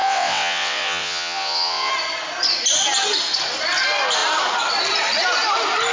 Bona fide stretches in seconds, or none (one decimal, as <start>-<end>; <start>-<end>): 1.9-5.9